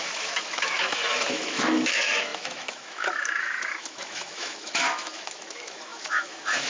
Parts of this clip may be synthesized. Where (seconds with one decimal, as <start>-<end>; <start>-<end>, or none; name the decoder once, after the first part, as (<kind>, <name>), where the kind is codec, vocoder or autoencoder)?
0.0-6.7 (autoencoder, DAC-VAE)